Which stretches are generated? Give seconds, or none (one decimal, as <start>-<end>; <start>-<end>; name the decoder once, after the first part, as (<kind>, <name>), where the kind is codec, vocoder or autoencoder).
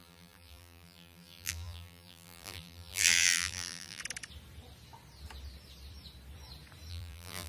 0.0-4.0 (vocoder, BigVGAN v2); 6.9-7.5